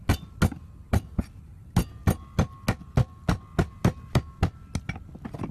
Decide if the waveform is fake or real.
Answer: real